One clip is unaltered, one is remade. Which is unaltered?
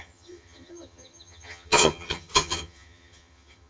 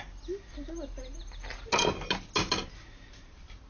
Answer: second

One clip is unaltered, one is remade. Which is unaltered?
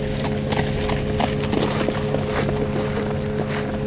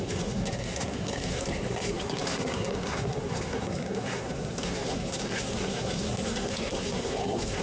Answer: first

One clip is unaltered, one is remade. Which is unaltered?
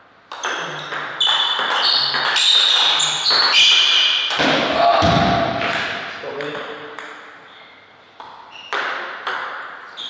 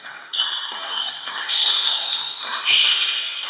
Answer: first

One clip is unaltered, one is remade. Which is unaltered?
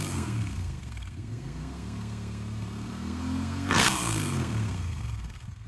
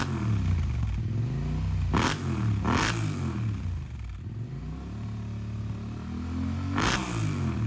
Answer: second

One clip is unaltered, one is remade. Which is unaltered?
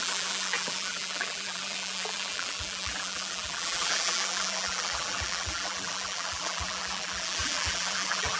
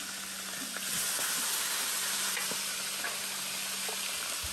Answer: second